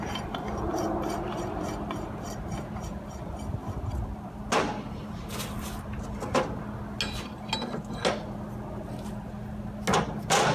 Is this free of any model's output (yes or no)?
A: yes